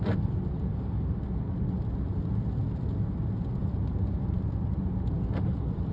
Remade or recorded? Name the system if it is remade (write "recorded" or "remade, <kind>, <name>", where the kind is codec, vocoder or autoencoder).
recorded